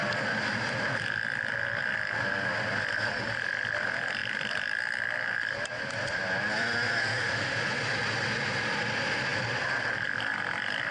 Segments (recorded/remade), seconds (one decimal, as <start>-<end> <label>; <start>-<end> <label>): 0.0-7.0 recorded; 7.0-7.6 remade; 7.6-10.9 recorded